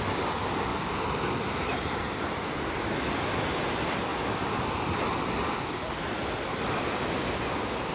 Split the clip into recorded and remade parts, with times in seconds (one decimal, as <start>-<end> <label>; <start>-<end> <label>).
0.0-7.9 recorded